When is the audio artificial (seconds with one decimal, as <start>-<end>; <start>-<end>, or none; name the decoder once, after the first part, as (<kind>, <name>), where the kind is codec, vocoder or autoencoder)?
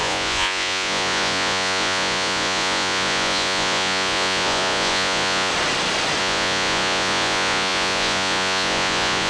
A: 0.0-5.5 (vocoder, Vocos); 6.2-9.3